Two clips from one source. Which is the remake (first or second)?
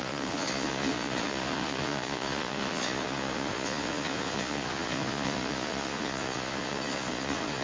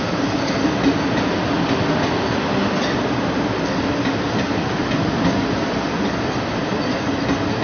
first